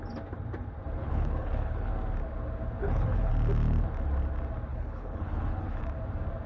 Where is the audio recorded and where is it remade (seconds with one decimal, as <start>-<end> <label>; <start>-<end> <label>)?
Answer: 0.0-1.0 recorded; 1.0-1.9 remade; 1.9-2.8 recorded; 2.8-3.3 remade; 3.3-4.7 recorded; 4.7-5.8 remade; 5.8-6.5 recorded